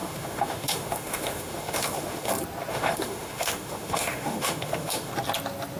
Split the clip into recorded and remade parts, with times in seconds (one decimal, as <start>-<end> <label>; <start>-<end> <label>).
0.0-2.3 remade; 2.3-2.7 recorded; 2.7-5.1 remade; 5.1-5.8 recorded